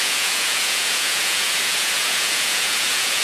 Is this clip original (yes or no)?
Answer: no